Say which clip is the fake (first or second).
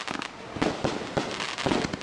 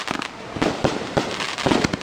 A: second